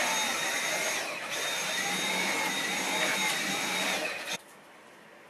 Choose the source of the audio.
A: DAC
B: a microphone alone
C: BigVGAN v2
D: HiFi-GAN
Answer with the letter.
B